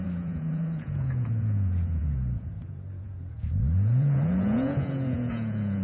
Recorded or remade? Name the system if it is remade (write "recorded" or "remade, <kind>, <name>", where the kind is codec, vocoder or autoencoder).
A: remade, vocoder, Vocos